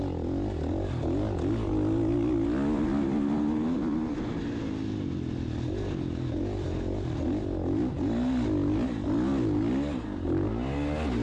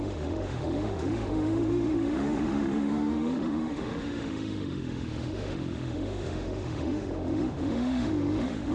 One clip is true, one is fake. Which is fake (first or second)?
second